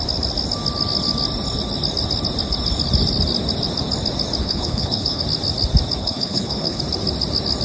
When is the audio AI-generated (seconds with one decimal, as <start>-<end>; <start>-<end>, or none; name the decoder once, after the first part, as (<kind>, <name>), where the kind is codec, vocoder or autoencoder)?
4.4-5.2 (codec, HILCodec); 6.0-6.8